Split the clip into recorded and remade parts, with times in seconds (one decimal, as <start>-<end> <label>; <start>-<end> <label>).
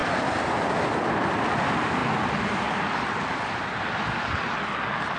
0.0-5.2 recorded